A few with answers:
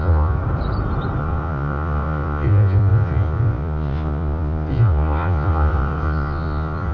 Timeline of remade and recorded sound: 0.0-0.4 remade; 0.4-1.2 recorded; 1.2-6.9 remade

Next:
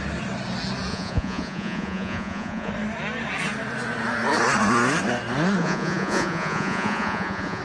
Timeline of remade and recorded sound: 0.0-0.9 recorded; 0.9-2.7 remade; 2.7-5.6 recorded; 5.6-7.6 remade

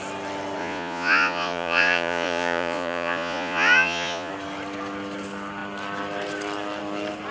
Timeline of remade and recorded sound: 0.0-0.6 recorded; 0.6-4.3 remade; 4.3-7.3 recorded

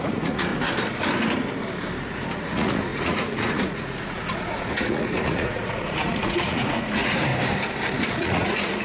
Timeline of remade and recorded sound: 0.0-0.5 remade; 0.5-2.0 recorded; 2.0-7.3 remade; 7.3-8.0 recorded; 8.0-8.8 remade

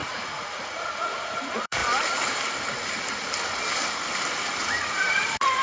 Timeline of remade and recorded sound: 0.0-1.8 remade; 1.8-4.4 recorded; 4.4-5.6 remade

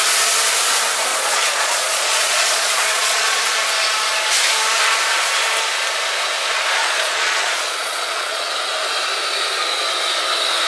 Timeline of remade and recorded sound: 0.0-1.1 recorded; 1.1-3.4 remade; 3.4-6.8 recorded; 6.8-8.5 remade; 8.5-10.7 recorded

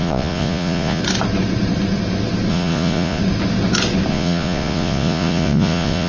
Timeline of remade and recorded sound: 0.0-1.0 remade; 1.0-2.5 recorded; 2.5-3.2 remade; 3.2-4.1 recorded; 4.1-6.1 remade